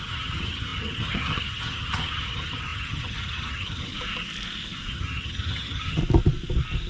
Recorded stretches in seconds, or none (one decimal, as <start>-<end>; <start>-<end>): 3.9-4.9; 6.0-6.9